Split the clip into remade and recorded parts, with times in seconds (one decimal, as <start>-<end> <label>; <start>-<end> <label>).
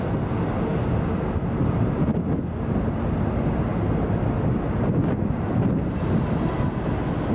0.0-7.3 recorded